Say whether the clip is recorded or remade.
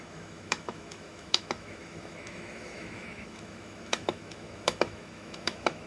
remade